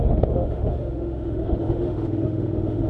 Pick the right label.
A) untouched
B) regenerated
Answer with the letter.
B